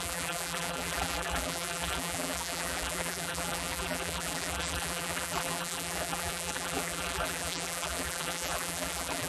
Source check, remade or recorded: remade